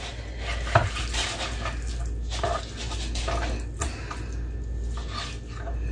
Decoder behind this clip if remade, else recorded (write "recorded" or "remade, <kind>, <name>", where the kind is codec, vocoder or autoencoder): recorded